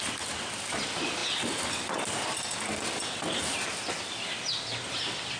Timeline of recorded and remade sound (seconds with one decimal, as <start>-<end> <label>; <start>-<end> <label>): 0.0-5.4 recorded